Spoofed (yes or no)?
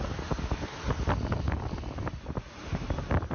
no